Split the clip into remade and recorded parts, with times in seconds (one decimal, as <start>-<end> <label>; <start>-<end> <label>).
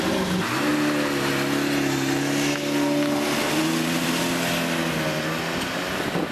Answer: 0.0-0.7 recorded; 0.7-1.3 remade; 1.3-3.6 recorded; 3.6-4.2 remade; 4.2-6.3 recorded